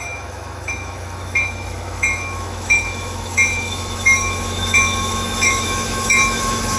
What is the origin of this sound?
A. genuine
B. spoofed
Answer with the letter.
B